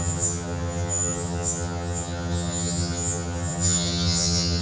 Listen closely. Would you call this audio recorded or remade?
remade